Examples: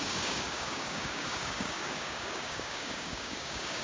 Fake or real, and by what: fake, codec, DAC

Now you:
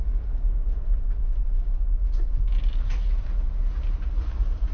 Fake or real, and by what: real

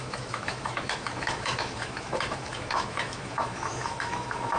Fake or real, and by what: fake, autoencoder, DAC-VAE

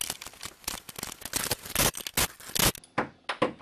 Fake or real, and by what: real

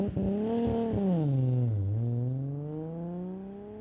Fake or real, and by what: real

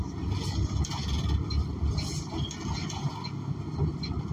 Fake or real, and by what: real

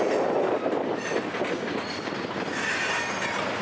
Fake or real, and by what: real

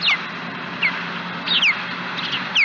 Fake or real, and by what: real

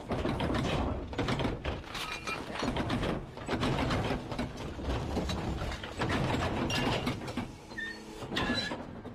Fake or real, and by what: real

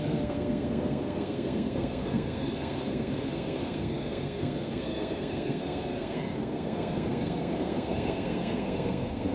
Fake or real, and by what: fake, codec, SNAC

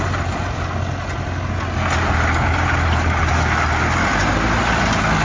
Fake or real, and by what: real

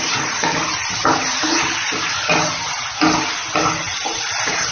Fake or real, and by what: real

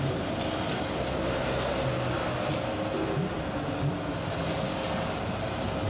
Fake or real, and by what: real